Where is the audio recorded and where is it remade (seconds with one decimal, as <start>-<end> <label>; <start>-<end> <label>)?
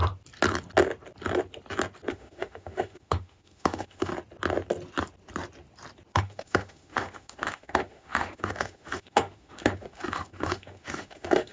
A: 0.0-2.1 recorded; 2.1-4.1 remade; 4.1-6.1 recorded; 6.1-11.5 remade